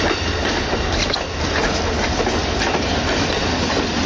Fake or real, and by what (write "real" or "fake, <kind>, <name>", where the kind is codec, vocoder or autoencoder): real